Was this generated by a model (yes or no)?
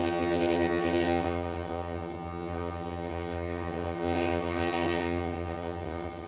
yes